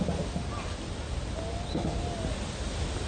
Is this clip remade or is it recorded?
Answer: recorded